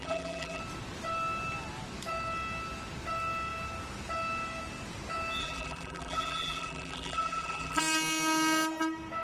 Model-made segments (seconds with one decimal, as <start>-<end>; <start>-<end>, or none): 0.0-0.6; 5.4-7.8